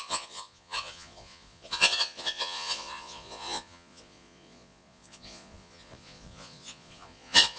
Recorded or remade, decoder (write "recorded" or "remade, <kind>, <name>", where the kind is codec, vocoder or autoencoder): remade, vocoder, Vocos